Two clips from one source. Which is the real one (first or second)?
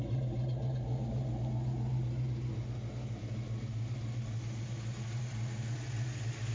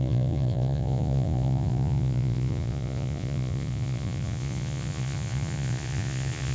first